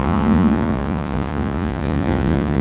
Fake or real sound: fake